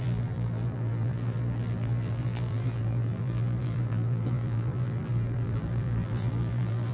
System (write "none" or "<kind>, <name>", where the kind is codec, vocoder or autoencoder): vocoder, BigVGAN v2